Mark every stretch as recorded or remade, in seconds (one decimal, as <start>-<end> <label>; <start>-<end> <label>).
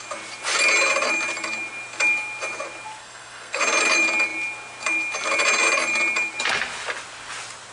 0.0-3.0 recorded; 3.0-3.6 remade; 3.6-7.7 recorded